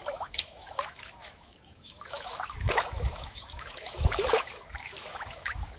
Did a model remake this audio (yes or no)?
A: yes